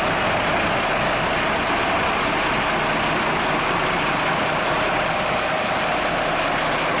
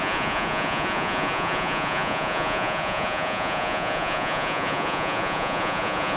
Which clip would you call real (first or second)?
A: first